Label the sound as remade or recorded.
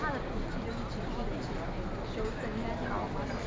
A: recorded